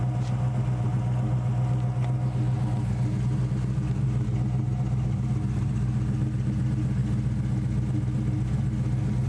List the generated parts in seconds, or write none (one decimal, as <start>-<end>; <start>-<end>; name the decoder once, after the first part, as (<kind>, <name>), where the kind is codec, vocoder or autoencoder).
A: none